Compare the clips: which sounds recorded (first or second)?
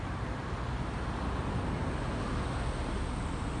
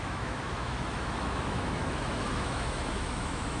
first